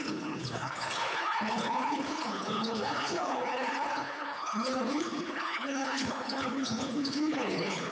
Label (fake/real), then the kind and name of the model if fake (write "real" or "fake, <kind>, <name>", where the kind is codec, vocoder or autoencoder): fake, codec, HILCodec